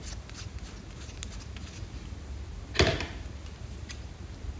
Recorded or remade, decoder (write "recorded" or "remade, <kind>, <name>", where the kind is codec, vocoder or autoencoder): recorded